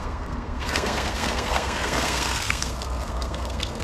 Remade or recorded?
remade